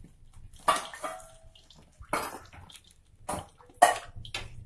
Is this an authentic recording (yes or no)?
yes